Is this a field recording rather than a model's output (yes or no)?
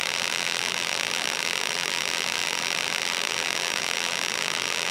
no